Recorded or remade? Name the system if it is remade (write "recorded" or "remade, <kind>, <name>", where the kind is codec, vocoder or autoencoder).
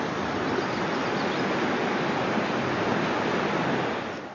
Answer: recorded